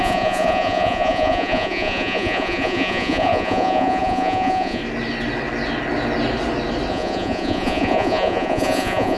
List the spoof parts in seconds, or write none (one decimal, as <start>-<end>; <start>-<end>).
0.0-4.8; 6.9-9.2